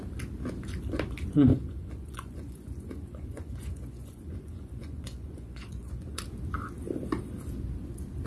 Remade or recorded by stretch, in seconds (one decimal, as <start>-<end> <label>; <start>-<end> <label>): 0.0-1.5 recorded; 1.5-6.2 remade; 6.2-8.3 recorded